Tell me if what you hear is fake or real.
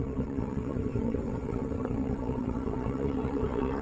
fake